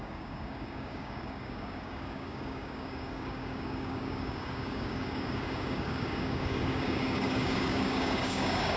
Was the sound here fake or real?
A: fake